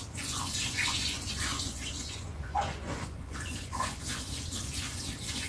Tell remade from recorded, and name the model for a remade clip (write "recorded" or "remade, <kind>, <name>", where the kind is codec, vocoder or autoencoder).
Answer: remade, vocoder, Vocos